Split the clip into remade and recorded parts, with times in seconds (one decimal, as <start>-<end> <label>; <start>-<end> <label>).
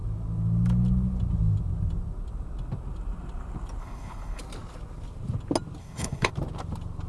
0.0-3.8 recorded; 3.8-4.4 remade; 4.4-5.8 recorded; 5.8-6.3 remade; 6.3-7.1 recorded